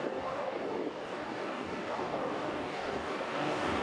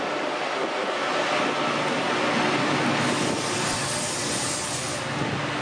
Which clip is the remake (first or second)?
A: first